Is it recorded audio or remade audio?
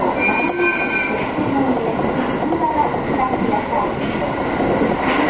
recorded